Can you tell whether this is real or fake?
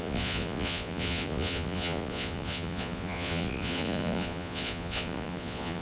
fake